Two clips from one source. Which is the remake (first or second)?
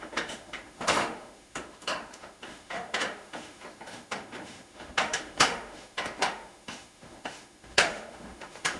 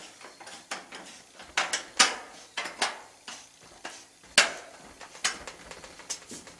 first